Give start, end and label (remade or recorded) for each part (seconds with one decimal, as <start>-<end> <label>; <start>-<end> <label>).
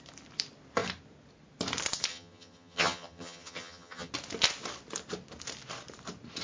0.0-2.1 recorded; 2.1-4.1 remade; 4.1-6.4 recorded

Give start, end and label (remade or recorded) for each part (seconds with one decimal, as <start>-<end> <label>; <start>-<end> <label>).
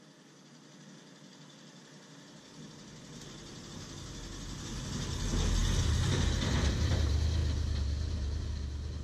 0.0-9.0 recorded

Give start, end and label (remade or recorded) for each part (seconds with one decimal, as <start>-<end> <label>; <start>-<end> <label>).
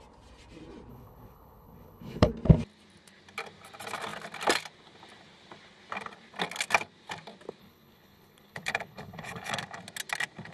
0.0-0.9 recorded; 0.9-2.3 remade; 2.3-7.6 recorded; 7.6-9.5 remade; 9.5-10.5 recorded